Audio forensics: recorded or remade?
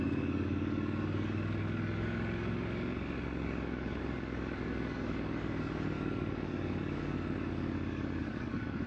remade